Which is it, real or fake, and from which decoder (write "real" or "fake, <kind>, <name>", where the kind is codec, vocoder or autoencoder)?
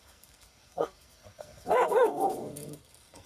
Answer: fake, codec, SNAC